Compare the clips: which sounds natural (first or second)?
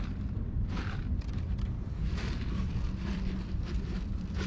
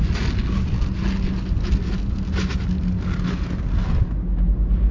second